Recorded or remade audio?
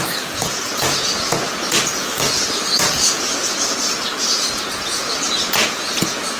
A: remade